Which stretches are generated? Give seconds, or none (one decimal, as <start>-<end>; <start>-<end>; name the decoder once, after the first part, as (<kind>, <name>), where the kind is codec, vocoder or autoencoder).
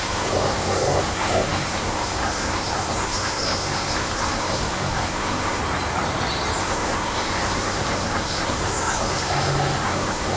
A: 0.0-5.6 (codec, SNAC); 6.6-10.4